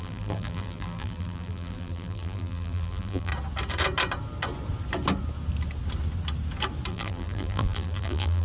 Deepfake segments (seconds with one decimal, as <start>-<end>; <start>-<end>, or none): 0.0-3.3; 6.9-8.4